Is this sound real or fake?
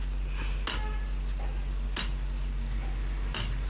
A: real